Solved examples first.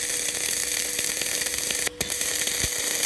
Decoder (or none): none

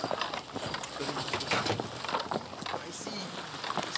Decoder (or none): none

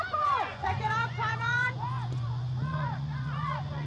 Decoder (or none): vocoder, Vocos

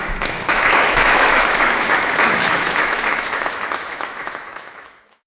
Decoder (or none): autoencoder, DAC-VAE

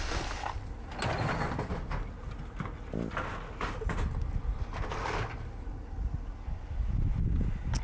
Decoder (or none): none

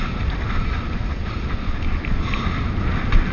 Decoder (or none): none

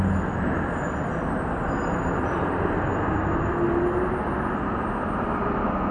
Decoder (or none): none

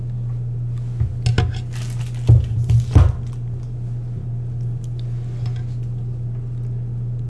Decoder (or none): none